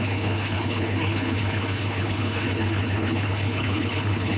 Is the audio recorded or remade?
remade